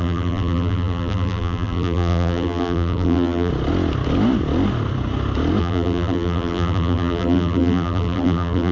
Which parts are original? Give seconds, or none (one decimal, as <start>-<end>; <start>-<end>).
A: 3.5-5.6